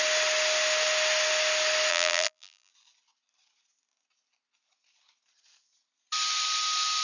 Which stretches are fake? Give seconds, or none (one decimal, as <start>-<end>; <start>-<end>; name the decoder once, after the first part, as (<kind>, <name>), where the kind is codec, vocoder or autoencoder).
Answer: 1.9-2.7 (vocoder, BigVGAN v2)